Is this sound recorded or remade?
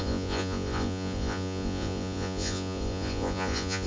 remade